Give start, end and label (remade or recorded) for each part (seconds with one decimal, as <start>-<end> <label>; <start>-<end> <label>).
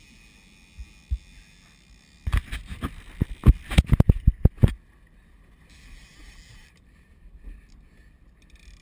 0.0-2.6 recorded; 2.6-7.7 remade; 7.7-8.8 recorded